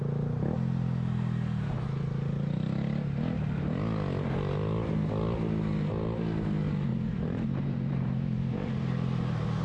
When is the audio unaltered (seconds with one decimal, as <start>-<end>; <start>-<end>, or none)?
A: 0.0-6.9